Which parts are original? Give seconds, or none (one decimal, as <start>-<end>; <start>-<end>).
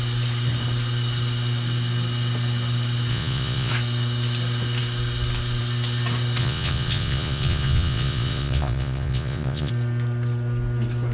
0.0-3.1; 3.7-6.4; 9.7-11.1